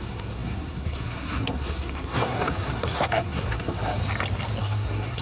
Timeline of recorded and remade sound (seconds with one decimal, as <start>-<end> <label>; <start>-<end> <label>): 0.0-4.0 remade; 4.0-4.6 recorded; 4.6-5.2 remade